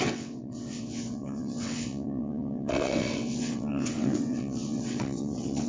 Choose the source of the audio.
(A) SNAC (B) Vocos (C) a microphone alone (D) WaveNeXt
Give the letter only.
D